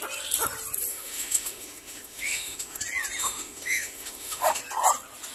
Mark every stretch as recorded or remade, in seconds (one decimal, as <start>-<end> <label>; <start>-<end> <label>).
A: 0.0-0.9 recorded; 0.9-2.8 remade; 2.8-3.2 recorded; 3.2-4.6 remade; 4.6-5.3 recorded